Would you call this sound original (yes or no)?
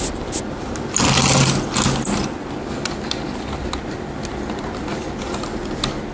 yes